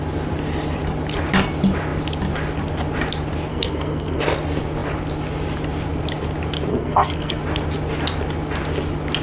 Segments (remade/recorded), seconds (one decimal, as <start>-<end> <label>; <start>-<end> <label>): 0.0-3.5 recorded; 3.5-4.2 remade; 4.2-6.7 recorded; 6.7-7.4 remade; 7.4-9.2 recorded